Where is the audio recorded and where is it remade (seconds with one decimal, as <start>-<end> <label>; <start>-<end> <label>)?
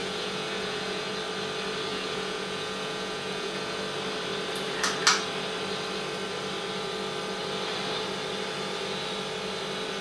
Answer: 0.0-1.1 remade; 1.1-1.9 recorded; 1.9-3.8 remade; 3.8-10.0 recorded